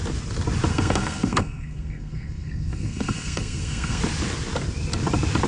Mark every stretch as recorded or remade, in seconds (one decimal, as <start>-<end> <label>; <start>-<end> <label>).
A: 0.0-0.7 recorded; 0.7-4.0 remade; 4.0-5.5 recorded